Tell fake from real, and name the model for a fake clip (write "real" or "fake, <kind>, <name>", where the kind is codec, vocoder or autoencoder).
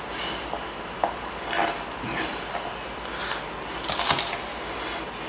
real